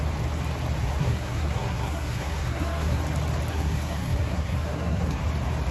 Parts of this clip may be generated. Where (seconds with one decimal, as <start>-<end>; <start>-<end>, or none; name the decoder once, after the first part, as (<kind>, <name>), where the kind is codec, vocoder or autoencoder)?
0.8-3.0 (codec, SNAC); 3.5-5.2